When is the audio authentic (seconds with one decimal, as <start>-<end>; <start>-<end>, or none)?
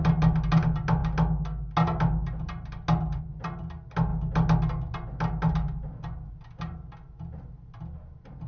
0.0-8.5